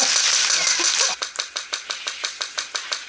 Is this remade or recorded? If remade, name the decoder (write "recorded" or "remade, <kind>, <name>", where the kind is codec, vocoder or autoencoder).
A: recorded